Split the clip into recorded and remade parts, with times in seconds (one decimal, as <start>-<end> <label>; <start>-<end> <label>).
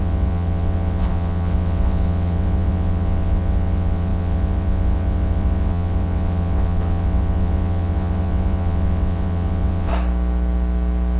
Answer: 0.0-9.9 remade; 9.9-11.2 recorded